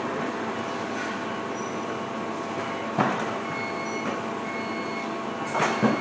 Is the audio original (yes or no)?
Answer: yes